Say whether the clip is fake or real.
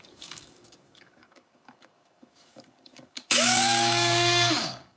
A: fake